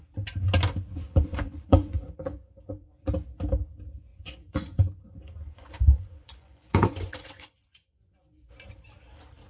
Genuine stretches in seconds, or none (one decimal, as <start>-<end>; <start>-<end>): 0.0-0.9; 3.1-4.1; 8.5-9.5